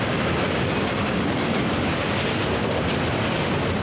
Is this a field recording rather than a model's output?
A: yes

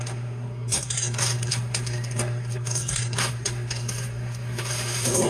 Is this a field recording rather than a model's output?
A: no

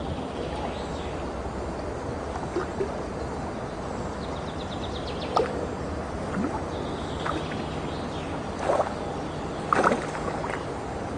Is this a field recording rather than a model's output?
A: yes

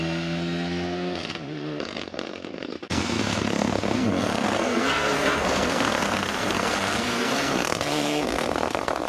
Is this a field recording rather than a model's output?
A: no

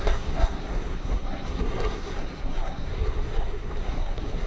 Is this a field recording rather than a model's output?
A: no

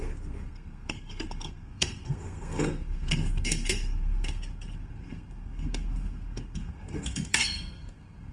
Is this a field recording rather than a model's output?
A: no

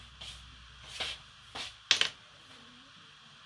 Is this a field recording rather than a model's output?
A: yes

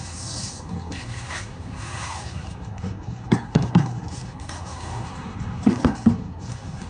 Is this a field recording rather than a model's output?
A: no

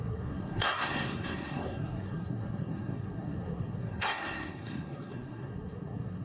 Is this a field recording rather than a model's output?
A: no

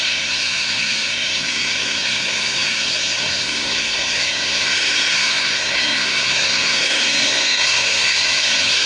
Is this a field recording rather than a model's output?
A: no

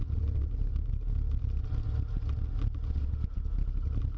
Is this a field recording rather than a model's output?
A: yes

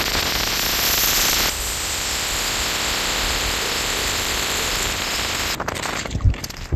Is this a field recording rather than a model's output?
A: yes